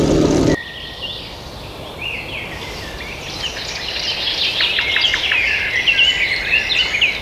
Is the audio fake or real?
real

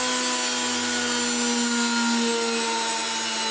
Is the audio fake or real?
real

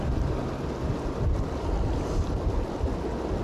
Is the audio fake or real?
real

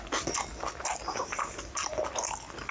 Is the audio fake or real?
real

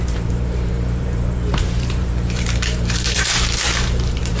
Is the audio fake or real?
fake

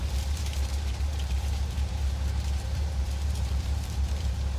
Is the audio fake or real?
fake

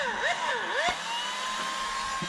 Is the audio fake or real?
real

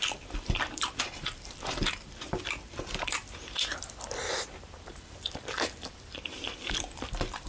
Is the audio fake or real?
fake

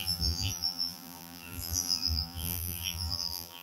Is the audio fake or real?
fake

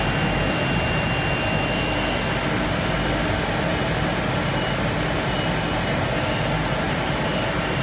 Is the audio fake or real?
real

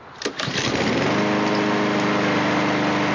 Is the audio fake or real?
real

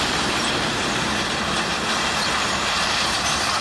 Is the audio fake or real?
fake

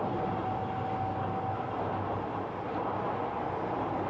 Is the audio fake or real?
real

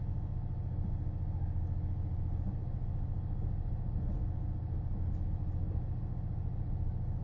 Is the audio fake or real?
real